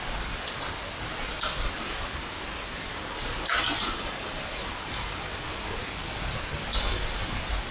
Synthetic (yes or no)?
no